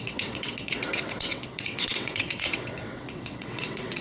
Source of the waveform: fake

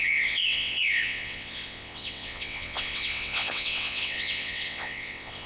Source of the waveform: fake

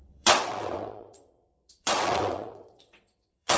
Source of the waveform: fake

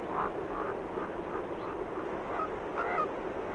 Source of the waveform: real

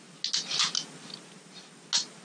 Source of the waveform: real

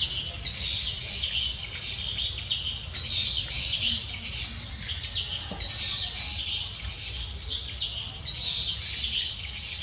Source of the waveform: real